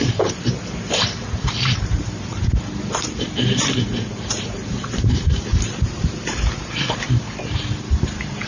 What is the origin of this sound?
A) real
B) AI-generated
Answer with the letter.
B